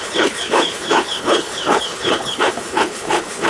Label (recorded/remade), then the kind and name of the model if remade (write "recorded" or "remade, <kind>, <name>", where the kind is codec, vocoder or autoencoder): remade, codec, HILCodec